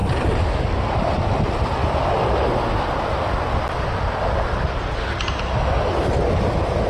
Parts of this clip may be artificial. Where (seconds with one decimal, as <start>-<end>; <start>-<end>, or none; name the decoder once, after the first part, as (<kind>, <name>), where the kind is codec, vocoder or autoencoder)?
none